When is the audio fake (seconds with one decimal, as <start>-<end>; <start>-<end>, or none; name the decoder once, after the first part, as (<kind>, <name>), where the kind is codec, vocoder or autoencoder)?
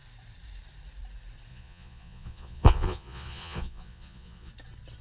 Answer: 1.5-4.5 (vocoder, Vocos)